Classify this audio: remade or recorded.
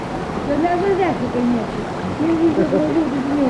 recorded